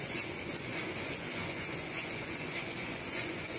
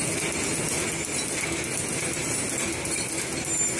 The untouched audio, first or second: second